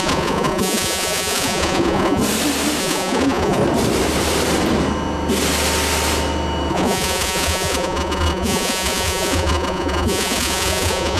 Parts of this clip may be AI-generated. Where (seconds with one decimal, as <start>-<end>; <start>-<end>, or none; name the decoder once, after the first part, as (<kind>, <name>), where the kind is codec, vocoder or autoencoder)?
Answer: 0.0-2.2 (vocoder, Vocos); 2.8-3.6; 6.7-11.2